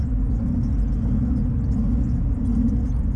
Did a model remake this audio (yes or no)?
no